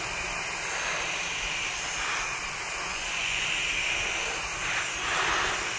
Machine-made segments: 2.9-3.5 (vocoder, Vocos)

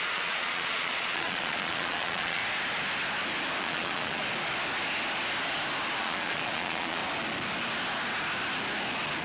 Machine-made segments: 0.0-2.4 (vocoder, Vocos); 3.6-4.2; 6.0-7.0

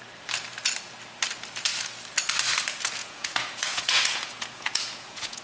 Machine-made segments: 3.0-5.4 (vocoder, Vocos)

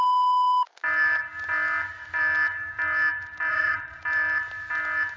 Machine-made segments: 3.5-4.0 (vocoder, Vocos)

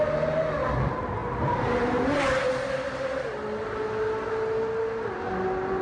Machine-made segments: none

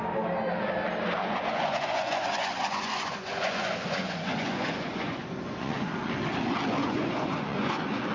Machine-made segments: 1.2-6.1 (vocoder, Vocos); 6.8-8.1